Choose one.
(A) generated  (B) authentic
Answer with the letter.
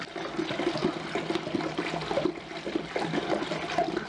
B